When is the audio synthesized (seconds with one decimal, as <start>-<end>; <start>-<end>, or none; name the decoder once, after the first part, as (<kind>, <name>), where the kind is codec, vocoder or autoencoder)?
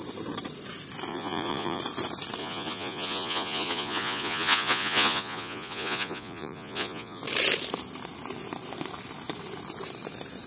1.1-1.8 (vocoder, Vocos); 2.4-7.2